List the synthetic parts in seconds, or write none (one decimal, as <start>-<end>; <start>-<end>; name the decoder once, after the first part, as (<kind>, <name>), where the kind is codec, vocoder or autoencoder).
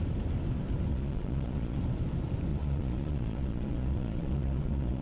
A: 0.9-1.8 (vocoder, Vocos); 2.5-5.0